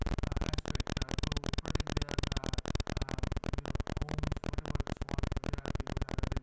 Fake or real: real